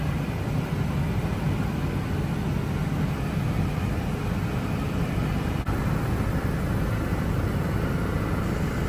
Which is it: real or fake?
real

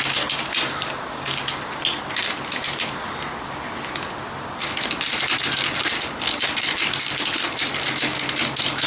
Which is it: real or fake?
real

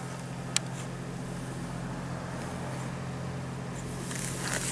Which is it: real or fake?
real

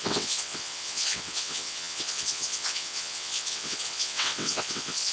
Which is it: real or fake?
fake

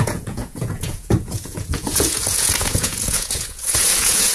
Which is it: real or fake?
fake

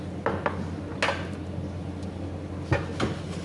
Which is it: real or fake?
real